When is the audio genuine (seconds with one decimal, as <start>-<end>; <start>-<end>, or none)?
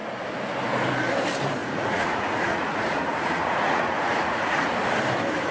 0.0-1.6; 4.7-5.5